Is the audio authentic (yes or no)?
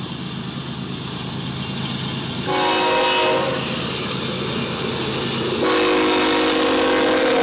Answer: yes